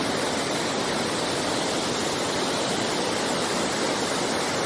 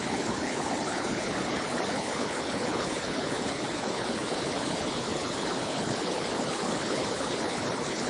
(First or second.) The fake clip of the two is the second